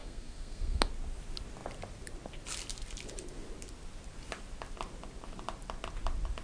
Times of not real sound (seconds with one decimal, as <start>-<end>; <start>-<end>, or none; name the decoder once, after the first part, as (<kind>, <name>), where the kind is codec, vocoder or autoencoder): 0.0-0.8 (codec, SNAC)